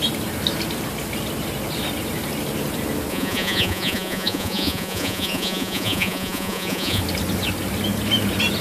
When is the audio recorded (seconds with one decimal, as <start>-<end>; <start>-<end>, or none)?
0.0-3.1; 7.0-8.6